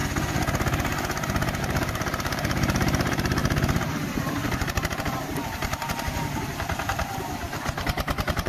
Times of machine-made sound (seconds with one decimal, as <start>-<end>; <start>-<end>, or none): 1.6-8.5